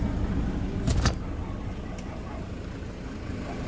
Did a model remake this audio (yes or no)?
no